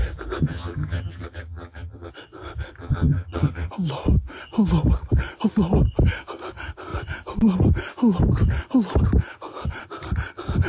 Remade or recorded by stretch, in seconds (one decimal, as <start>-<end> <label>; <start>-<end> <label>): 0.0-0.4 recorded; 0.4-2.1 remade; 2.1-2.8 recorded; 2.8-3.7 remade; 3.7-10.7 recorded

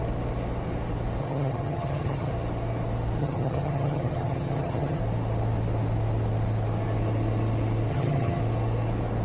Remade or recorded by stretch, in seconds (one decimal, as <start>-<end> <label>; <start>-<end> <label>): 0.0-1.2 recorded; 1.2-2.3 remade; 2.3-3.2 recorded; 3.2-5.0 remade; 5.0-7.9 recorded; 7.9-8.4 remade; 8.4-9.2 recorded

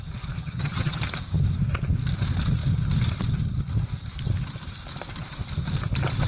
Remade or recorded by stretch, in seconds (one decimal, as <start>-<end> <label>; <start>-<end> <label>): 0.0-0.4 recorded; 0.4-1.0 remade; 1.0-6.3 recorded